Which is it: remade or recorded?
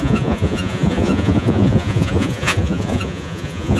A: remade